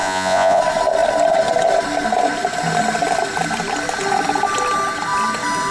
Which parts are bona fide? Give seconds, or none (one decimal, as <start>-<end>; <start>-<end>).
0.6-5.7